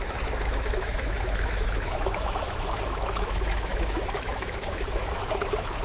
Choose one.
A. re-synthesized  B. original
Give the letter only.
A